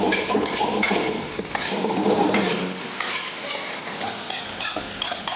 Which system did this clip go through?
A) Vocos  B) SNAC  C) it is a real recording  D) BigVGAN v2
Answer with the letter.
C